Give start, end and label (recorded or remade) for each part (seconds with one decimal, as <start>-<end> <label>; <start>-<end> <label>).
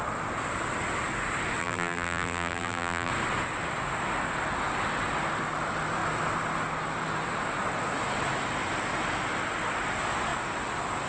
0.0-1.6 recorded; 1.6-3.1 remade; 3.1-11.1 recorded